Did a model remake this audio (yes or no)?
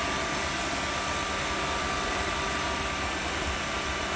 no